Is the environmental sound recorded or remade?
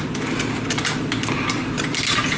recorded